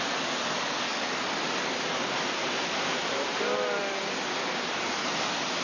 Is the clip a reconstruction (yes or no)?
no